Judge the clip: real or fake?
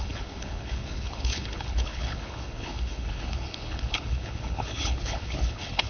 fake